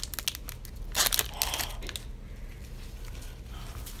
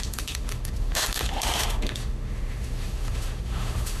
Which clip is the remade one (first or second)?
second